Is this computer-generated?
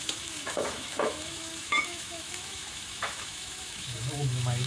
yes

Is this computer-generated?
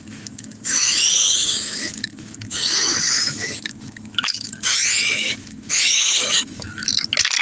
yes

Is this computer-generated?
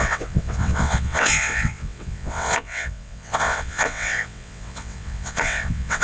yes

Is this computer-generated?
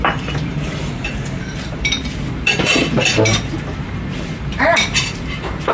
yes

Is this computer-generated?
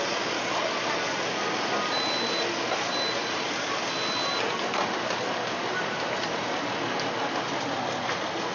no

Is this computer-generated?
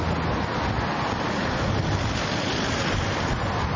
no